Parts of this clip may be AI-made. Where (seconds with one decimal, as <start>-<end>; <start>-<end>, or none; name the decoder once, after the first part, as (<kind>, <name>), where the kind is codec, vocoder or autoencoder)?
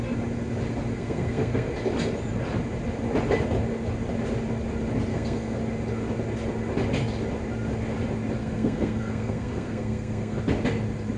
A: 0.9-1.7 (codec, SNAC); 5.1-5.6; 8.4-10.4